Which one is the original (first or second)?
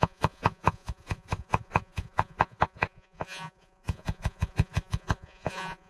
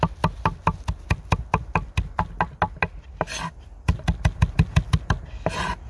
second